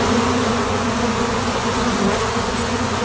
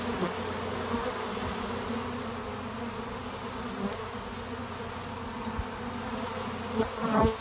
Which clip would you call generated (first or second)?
first